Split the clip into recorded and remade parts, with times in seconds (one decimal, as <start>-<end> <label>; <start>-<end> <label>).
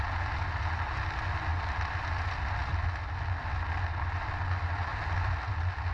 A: 0.0-5.9 recorded